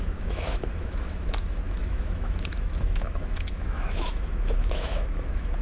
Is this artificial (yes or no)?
yes